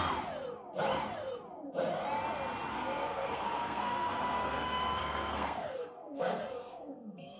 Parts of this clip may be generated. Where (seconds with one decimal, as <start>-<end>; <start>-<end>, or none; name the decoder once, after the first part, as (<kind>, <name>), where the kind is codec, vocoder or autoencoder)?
2.7-7.4 (codec, SNAC)